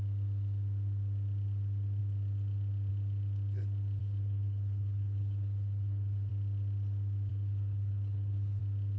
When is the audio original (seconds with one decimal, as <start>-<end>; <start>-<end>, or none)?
0.0-4.0; 6.3-7.3; 8.6-9.0